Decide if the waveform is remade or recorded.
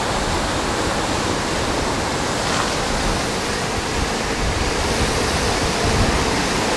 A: recorded